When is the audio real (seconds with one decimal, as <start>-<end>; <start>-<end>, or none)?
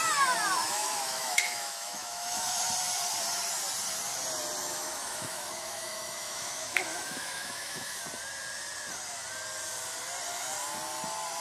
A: 0.0-0.8; 2.6-4.6; 8.0-11.4